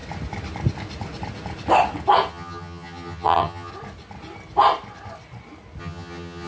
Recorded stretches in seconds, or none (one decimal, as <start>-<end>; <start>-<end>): 0.0-2.3; 3.7-5.8